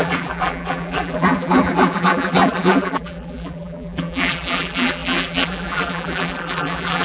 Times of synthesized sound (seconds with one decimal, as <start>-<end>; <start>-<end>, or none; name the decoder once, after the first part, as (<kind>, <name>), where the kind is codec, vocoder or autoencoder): 0.0-7.0 (vocoder, BigVGAN v2)